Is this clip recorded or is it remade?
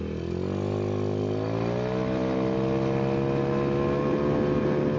recorded